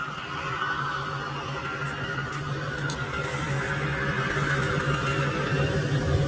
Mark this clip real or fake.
real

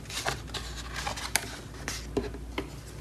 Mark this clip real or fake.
real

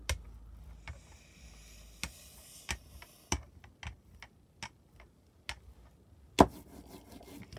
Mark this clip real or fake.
real